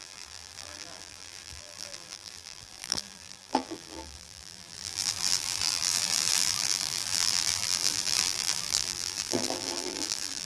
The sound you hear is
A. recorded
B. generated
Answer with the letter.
B